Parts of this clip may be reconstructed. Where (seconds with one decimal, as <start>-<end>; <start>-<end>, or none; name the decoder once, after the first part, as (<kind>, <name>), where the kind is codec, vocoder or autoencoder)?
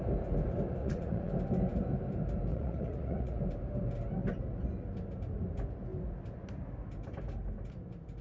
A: 0.8-1.3 (vocoder, Vocos); 2.5-3.4